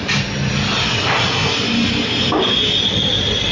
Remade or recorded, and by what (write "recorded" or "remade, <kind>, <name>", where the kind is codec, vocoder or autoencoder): recorded